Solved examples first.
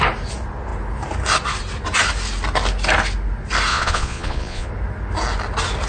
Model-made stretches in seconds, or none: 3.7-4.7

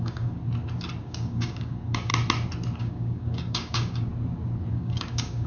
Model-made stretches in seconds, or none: 0.0-0.4; 1.0-2.1; 2.8-4.1; 4.7-5.5

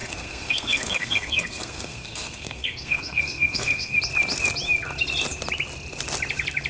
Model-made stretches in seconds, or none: 0.0-4.0

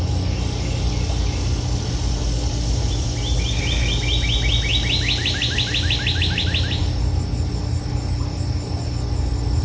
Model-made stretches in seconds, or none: none